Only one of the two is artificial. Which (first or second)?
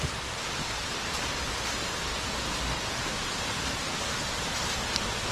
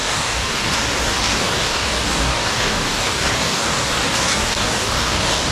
second